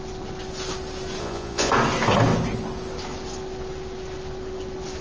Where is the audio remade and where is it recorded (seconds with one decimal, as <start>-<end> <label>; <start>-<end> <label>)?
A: 0.0-1.2 recorded; 1.2-1.7 remade; 1.7-5.0 recorded